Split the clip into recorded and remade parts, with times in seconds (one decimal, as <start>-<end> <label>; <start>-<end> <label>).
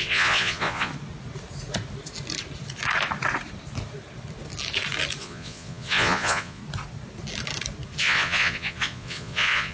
0.0-0.9 remade; 0.9-5.2 recorded; 5.2-6.6 remade; 6.6-8.0 recorded; 8.0-9.7 remade